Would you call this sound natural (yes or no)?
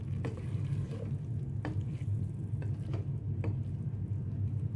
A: no